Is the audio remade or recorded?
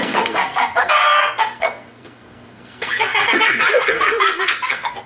remade